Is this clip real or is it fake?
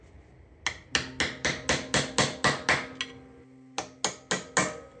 real